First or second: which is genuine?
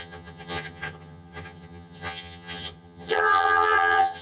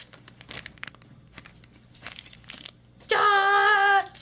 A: second